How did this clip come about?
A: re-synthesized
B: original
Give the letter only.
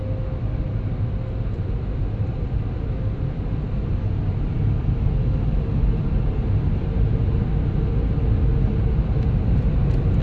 B